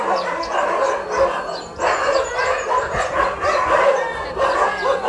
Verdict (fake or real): real